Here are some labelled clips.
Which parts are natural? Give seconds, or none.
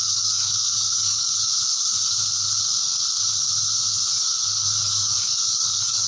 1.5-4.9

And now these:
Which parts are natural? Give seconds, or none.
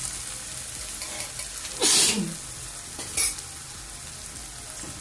0.0-5.0